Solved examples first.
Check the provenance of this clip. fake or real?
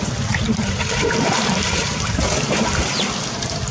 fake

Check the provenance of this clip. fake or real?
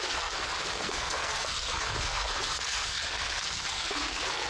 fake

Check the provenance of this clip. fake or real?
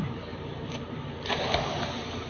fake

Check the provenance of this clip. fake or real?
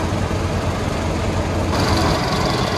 fake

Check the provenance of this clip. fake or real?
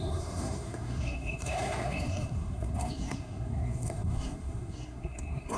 fake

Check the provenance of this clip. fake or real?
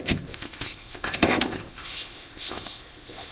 fake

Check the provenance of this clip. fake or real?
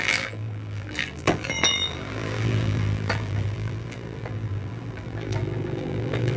fake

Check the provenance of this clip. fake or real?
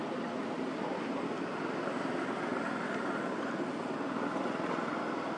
real